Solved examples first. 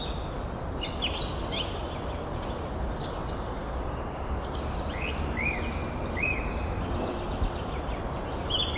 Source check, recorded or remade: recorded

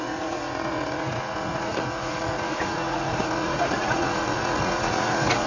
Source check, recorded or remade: remade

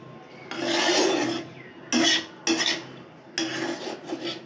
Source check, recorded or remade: recorded